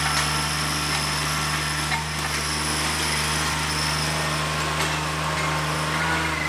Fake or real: real